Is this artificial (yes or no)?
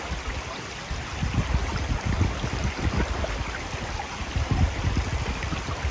no